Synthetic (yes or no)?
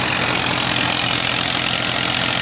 no